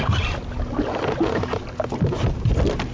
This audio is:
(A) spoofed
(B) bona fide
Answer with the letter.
B